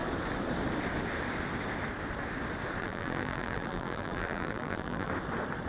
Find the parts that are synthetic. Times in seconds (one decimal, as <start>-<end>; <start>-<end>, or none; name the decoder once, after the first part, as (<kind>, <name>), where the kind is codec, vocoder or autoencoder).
2.8-5.1 (vocoder, BigVGAN v2)